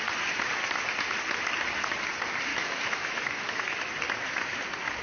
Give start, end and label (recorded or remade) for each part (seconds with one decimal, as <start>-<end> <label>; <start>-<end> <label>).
0.0-2.5 recorded; 2.5-3.9 remade; 3.9-5.0 recorded